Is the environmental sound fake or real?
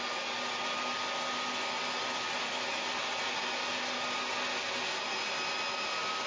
real